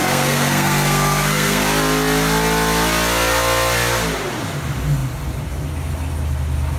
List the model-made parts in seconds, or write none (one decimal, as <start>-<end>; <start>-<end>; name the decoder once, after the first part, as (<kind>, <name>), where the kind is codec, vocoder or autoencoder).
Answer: 0.0-1.6 (codec, SNAC)